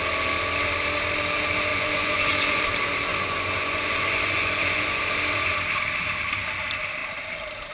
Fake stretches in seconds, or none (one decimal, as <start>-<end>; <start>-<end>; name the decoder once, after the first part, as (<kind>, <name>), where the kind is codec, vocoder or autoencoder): 1.7-2.6 (vocoder, Vocos); 3.1-5.0